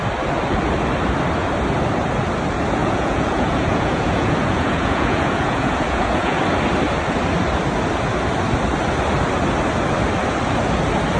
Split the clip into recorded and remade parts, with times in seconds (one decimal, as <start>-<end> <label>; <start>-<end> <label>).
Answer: 0.0-2.8 recorded; 2.8-6.4 remade; 6.4-11.2 recorded